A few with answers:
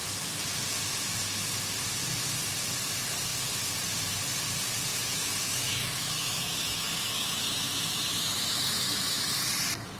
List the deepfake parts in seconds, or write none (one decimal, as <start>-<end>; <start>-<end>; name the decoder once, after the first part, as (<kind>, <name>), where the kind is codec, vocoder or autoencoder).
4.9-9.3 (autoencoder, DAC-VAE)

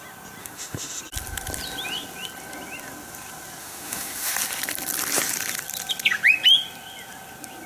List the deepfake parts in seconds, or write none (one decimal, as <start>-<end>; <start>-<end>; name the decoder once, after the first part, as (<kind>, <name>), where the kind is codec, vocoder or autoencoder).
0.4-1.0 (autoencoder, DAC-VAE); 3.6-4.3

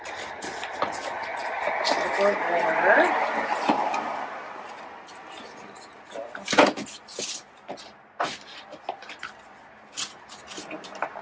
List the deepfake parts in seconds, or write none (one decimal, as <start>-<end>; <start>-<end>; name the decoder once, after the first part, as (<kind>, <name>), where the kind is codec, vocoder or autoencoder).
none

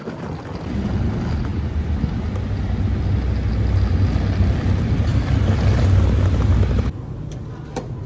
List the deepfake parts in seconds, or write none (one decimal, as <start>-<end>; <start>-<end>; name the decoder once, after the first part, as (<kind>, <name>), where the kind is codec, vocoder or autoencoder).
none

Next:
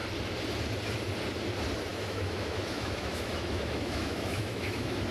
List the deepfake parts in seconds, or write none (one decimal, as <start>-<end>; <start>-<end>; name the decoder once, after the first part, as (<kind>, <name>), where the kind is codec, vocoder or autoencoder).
1.9-5.1 (autoencoder, DAC-VAE)

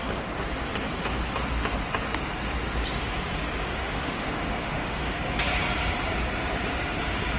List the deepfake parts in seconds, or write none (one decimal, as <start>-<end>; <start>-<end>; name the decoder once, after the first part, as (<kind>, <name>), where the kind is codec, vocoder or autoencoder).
3.6-5.2 (autoencoder, DAC-VAE)

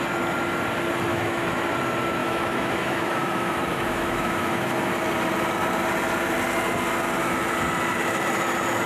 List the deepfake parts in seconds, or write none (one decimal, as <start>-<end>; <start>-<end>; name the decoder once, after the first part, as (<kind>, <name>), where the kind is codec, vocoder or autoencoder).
1.1-1.6 (autoencoder, DAC-VAE); 2.2-4.9

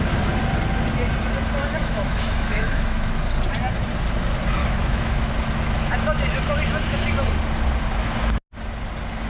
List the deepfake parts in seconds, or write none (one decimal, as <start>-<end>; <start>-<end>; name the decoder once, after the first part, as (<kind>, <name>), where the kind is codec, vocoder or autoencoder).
1.8-3.2 (autoencoder, DAC-VAE); 4.6-5.3